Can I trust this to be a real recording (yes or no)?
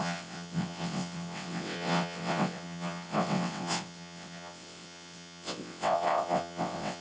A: no